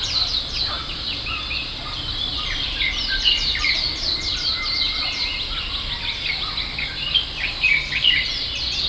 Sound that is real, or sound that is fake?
real